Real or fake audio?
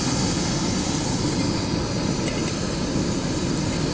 real